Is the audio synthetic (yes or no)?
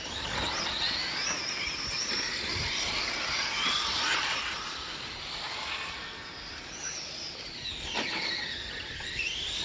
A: no